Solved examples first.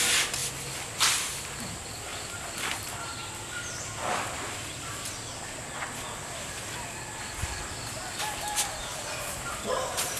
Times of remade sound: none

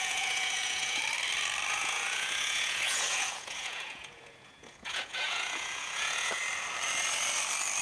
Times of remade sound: 0.0-1.0 (vocoder, Vocos); 1.7-6.4

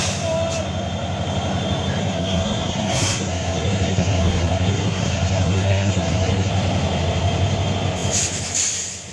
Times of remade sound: 2.0-6.5 (codec, SNAC)

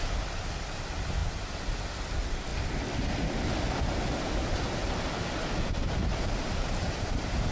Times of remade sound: none